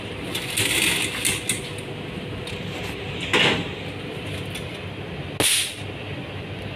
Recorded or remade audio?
recorded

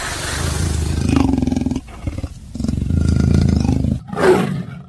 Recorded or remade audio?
recorded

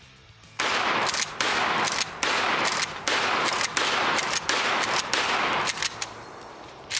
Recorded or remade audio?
recorded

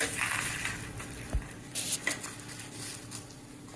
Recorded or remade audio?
recorded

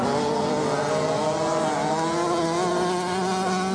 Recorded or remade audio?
recorded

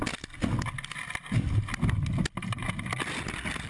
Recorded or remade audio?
recorded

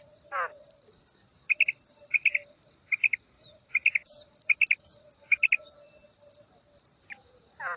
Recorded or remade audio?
recorded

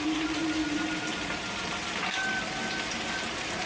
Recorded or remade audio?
recorded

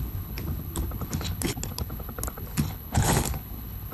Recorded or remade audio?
remade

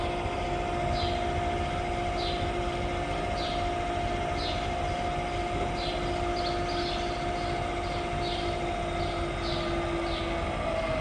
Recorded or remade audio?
recorded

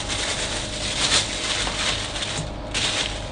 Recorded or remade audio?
recorded